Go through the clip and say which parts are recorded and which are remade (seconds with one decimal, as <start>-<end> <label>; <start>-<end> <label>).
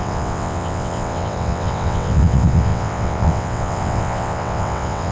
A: 0.0-5.1 remade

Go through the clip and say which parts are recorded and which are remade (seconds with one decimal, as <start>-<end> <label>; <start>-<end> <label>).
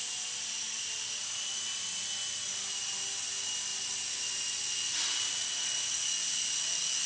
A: 0.0-7.1 recorded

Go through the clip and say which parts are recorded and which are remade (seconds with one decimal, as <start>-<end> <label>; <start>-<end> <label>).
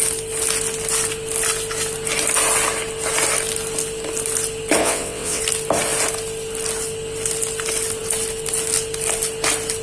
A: 0.0-4.8 recorded; 4.8-5.4 remade; 5.4-9.8 recorded